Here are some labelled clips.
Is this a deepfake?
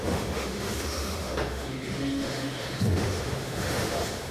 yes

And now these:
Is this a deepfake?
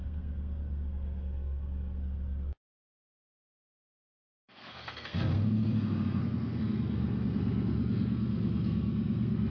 yes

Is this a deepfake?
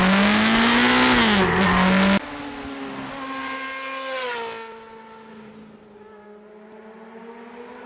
no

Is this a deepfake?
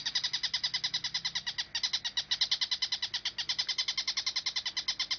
no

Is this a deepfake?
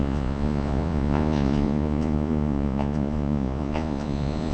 yes